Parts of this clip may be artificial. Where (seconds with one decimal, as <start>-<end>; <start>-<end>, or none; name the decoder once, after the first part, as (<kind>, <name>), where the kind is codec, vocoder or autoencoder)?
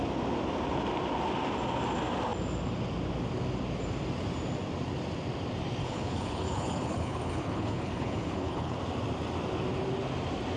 5.8-8.8 (codec, HILCodec)